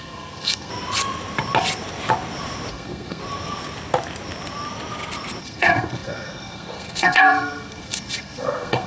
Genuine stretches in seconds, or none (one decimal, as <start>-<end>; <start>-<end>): 0.7-2.7; 3.2-5.4